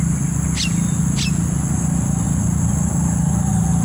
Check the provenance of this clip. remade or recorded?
recorded